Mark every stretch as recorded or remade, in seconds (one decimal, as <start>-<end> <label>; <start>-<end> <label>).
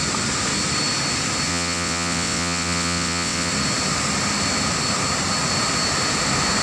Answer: 0.0-1.5 recorded; 1.5-3.5 remade; 3.5-6.6 recorded